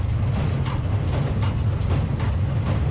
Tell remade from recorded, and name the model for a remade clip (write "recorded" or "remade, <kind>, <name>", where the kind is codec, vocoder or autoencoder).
recorded